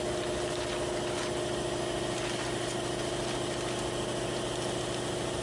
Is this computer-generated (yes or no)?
no